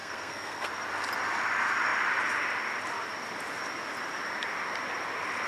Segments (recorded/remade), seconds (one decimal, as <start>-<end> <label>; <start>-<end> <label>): 0.0-0.7 remade; 0.7-5.5 recorded

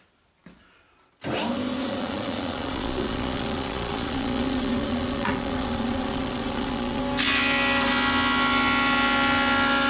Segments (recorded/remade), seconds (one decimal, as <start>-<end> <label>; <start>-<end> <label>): 0.0-1.8 recorded; 1.8-7.0 remade; 7.0-9.9 recorded

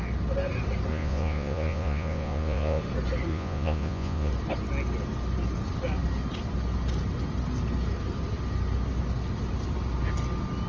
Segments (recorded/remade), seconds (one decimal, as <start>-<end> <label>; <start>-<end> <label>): 0.0-0.9 recorded; 0.9-2.8 remade; 2.8-3.3 recorded; 3.3-4.3 remade; 4.3-10.7 recorded

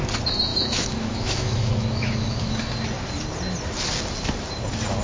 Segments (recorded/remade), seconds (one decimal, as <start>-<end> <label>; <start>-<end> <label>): 0.0-0.5 recorded; 0.5-2.5 remade; 2.5-5.0 recorded

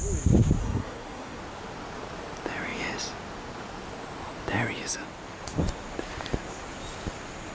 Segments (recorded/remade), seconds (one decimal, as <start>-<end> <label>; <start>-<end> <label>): 0.0-0.6 recorded; 0.6-1.4 remade; 1.4-7.5 recorded

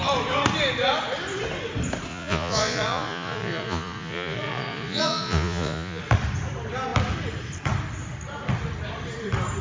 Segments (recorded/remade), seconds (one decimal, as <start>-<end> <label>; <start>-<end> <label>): 0.0-2.1 recorded; 2.1-6.0 remade; 6.0-9.6 recorded